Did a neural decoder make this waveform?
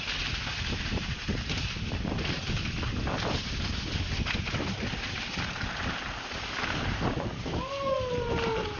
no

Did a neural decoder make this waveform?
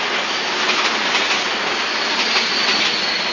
no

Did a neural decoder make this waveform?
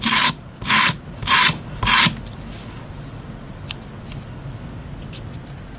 no